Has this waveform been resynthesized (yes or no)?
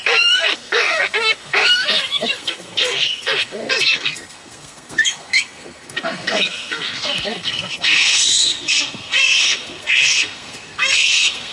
yes